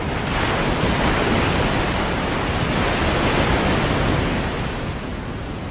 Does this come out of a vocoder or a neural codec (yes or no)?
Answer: no